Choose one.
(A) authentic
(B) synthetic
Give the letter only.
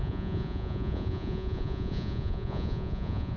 B